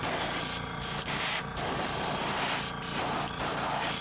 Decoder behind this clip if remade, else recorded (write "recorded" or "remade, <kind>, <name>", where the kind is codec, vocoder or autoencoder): recorded